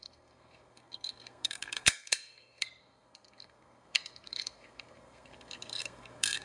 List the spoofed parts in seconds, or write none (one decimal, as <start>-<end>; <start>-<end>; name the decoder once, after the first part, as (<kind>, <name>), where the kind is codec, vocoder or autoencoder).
0.0-6.4 (codec, SNAC)